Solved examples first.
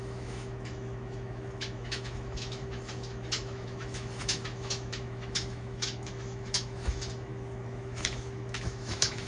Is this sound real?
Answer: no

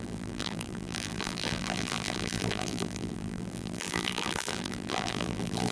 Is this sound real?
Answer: no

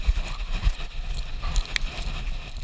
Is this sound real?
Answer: yes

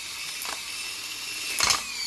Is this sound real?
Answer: yes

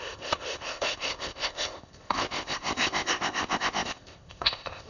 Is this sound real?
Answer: no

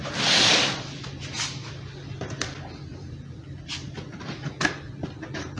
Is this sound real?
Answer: yes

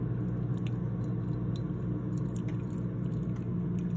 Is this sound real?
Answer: yes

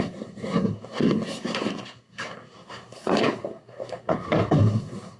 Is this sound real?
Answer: no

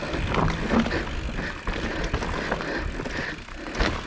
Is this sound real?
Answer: yes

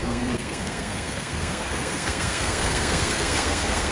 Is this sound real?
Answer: no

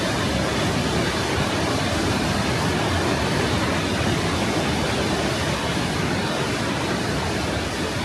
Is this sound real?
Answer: yes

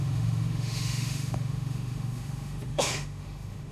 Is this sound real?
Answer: no